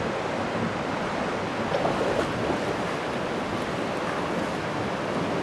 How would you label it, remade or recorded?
recorded